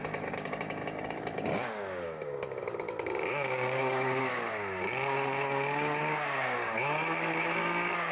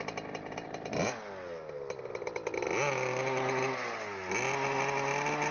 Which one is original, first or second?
second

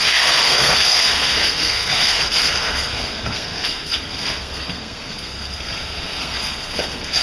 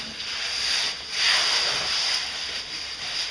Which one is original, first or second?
second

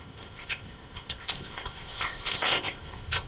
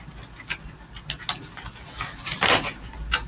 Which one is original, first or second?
second